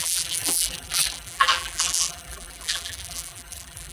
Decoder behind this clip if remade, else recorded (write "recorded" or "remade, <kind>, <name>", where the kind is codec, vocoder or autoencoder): remade, vocoder, BigVGAN v2